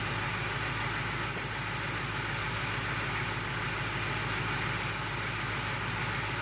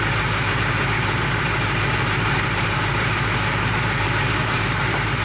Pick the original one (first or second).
first